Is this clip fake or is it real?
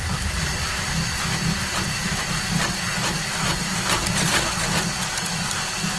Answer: real